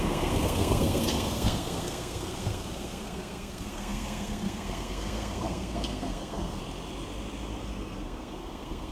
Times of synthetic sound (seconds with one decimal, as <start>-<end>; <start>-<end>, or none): 0.0-6.6; 7.6-8.9